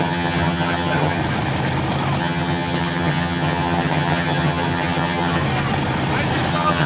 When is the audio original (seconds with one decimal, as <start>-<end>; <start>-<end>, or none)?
1.2-2.2; 5.4-6.5